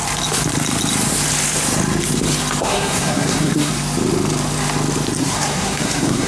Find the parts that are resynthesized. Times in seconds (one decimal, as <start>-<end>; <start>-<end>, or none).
2.6-3.7; 5.2-6.3